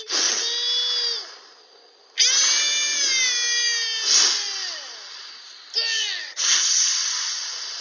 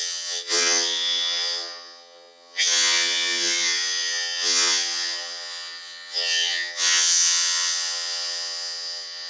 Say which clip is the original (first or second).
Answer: first